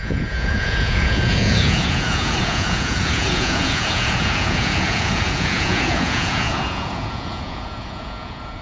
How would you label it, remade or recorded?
remade